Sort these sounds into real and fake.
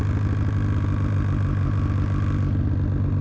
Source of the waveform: real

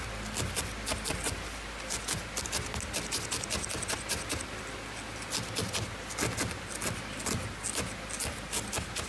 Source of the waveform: real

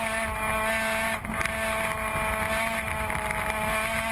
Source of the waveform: real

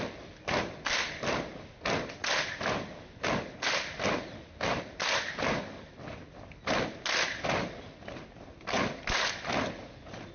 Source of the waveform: real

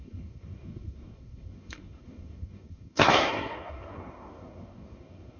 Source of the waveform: fake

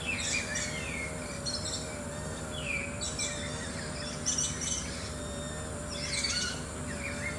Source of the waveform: real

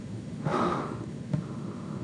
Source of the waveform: fake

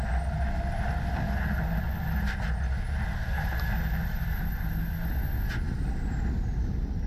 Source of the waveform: real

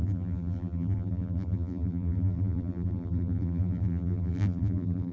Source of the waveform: fake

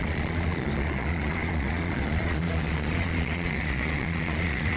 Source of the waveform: fake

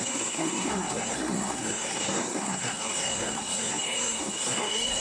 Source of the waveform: fake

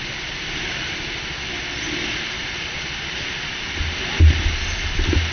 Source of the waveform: real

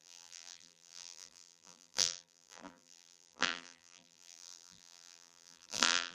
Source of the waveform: fake